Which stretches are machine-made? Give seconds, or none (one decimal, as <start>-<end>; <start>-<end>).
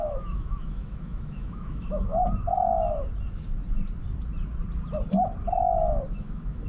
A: 0.0-2.2; 6.2-6.7